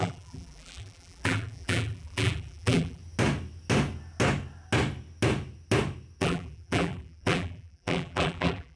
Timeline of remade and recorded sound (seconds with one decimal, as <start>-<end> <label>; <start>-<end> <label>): 0.0-3.0 remade; 3.0-6.2 recorded; 6.2-8.8 remade